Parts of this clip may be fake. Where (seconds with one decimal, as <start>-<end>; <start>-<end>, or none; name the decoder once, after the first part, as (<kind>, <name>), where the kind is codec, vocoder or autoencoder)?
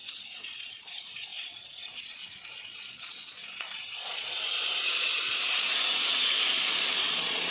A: 0.0-7.5 (vocoder, Vocos)